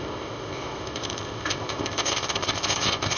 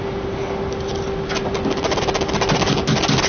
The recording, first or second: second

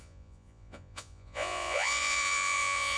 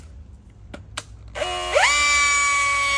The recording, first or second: second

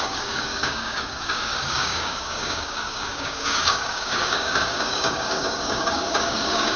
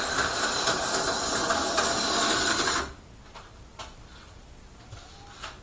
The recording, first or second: second